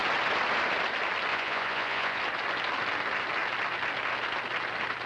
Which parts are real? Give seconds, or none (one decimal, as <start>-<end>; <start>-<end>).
0.0-1.3; 2.2-5.1